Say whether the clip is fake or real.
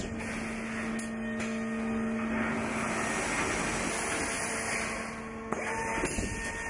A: real